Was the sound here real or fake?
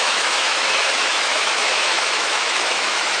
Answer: fake